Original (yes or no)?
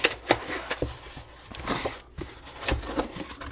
yes